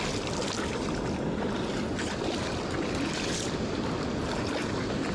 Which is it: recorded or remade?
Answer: recorded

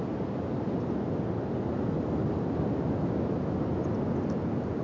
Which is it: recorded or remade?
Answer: recorded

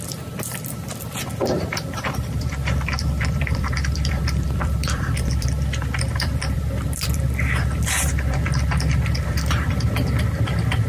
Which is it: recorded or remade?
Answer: remade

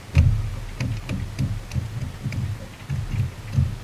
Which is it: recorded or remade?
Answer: recorded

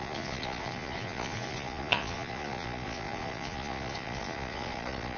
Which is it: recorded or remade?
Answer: remade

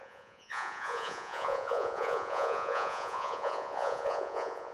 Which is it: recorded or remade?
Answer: remade